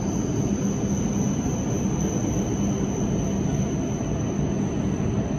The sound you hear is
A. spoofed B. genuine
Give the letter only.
B